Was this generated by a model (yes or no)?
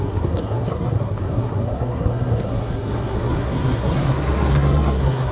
yes